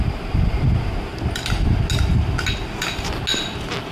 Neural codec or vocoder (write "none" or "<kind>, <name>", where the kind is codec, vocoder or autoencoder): none